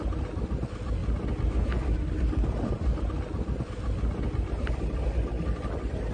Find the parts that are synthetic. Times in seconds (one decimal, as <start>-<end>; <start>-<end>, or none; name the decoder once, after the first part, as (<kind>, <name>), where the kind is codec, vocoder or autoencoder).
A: none